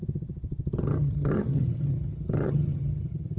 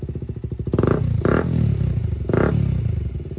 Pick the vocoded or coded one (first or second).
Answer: first